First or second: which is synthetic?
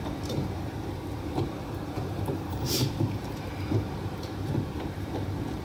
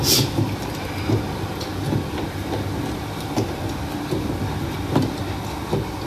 first